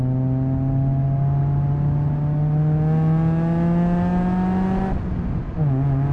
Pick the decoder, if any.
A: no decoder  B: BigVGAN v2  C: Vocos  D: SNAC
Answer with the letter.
A